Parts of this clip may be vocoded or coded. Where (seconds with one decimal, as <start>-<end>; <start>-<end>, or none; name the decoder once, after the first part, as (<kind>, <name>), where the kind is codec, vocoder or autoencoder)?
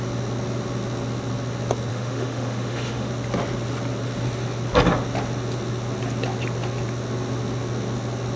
1.9-3.1 (autoencoder, DAC-VAE)